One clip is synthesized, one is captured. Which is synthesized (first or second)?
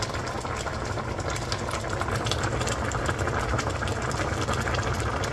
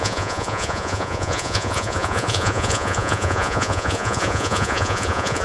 second